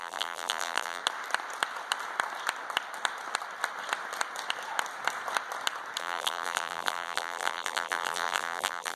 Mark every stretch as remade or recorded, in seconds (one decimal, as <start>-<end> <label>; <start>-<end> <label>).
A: 0.0-1.0 remade; 1.0-6.0 recorded; 6.0-9.0 remade

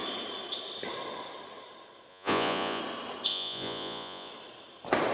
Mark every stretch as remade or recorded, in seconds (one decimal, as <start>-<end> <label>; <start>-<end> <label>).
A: 0.0-2.1 recorded; 2.1-2.8 remade; 2.8-3.3 recorded; 3.3-4.3 remade; 4.3-5.1 recorded